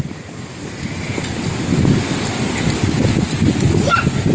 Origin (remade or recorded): recorded